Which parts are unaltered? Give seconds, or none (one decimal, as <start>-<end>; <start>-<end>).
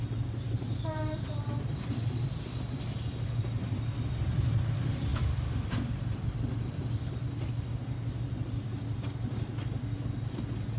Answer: 0.0-5.1; 7.1-10.8